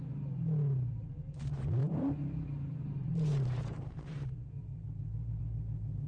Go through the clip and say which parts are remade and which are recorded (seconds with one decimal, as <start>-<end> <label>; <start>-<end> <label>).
0.0-1.8 recorded; 1.8-5.4 remade; 5.4-6.1 recorded